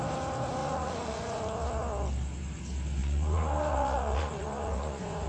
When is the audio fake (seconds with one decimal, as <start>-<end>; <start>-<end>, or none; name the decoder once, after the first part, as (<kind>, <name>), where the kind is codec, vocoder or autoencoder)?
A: 0.6-1.4 (vocoder, Vocos); 3.0-5.3